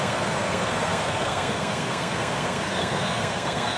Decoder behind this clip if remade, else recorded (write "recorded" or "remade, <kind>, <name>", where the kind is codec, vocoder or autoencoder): remade, codec, SNAC